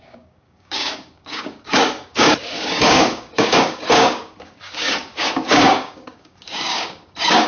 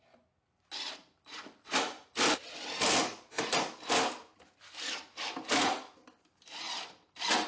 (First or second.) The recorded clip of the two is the second